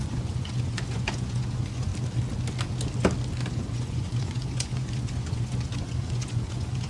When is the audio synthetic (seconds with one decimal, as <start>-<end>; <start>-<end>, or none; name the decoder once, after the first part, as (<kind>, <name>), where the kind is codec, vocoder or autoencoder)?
0.0-1.9 (vocoder, Vocos); 3.5-6.9